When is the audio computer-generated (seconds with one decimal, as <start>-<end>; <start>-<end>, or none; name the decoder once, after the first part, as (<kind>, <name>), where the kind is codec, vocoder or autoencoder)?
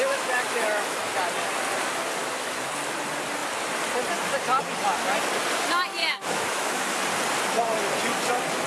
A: 0.0-1.0 (autoencoder, DAC-VAE); 2.2-2.7; 6.0-6.9